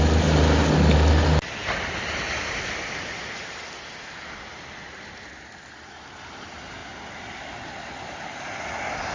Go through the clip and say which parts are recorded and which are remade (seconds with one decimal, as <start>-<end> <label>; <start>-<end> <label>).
0.0-9.1 recorded